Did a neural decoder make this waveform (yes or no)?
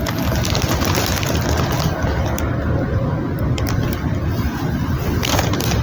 no